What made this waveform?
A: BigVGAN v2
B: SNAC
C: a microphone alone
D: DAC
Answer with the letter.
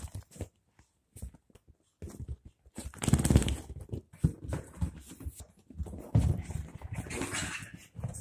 C